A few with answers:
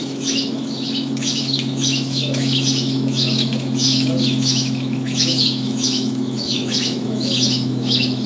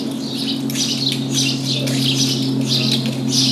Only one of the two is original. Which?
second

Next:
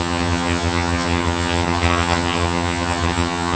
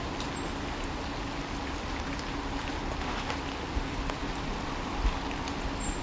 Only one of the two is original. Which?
second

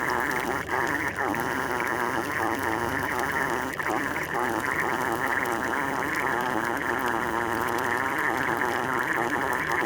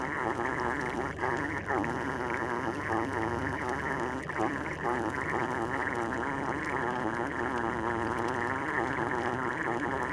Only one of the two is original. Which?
second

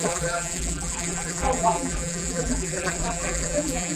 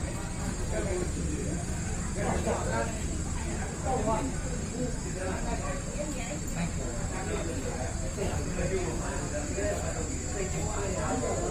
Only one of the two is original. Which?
second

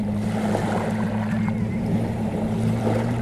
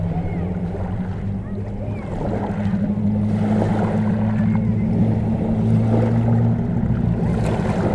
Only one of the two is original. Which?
second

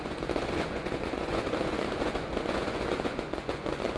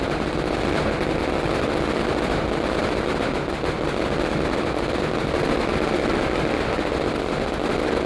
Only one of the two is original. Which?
second